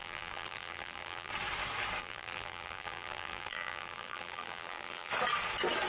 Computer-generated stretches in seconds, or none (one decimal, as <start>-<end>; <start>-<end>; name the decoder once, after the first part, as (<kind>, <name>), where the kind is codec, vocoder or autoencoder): 0.0-1.3 (vocoder, BigVGAN v2); 2.0-5.1